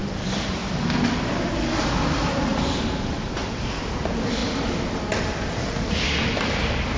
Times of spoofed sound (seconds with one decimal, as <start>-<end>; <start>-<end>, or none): none